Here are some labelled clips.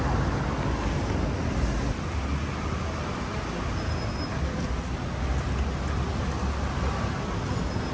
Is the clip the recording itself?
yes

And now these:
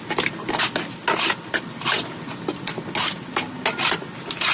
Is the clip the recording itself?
yes